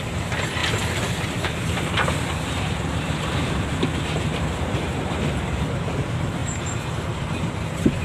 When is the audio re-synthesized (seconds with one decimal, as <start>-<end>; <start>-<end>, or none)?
0.6-5.4; 6.4-6.9